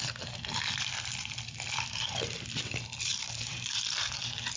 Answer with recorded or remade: remade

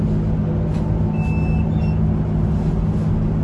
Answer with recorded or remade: recorded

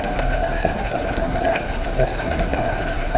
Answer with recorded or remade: remade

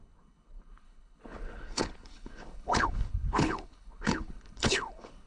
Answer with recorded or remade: remade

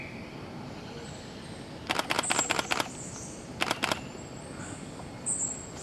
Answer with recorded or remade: recorded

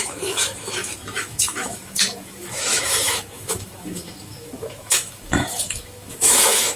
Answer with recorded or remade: remade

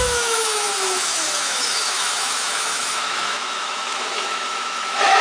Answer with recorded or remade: remade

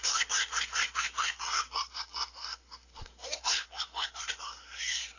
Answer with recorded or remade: remade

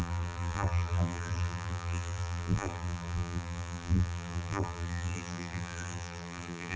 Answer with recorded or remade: remade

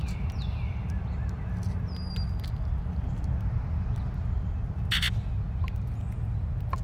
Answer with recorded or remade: recorded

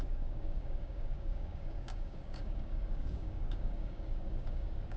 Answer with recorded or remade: remade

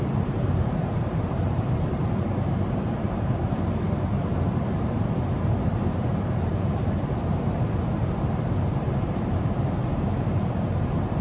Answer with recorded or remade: remade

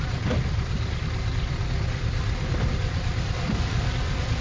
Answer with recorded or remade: remade